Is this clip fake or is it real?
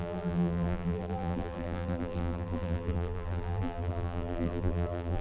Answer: fake